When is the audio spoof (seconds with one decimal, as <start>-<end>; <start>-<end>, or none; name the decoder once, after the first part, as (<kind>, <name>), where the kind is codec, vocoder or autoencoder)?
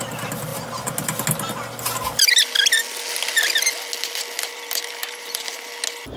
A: 5.0-5.7 (vocoder, BigVGAN v2)